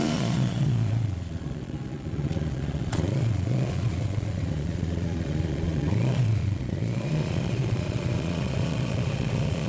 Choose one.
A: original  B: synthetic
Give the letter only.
B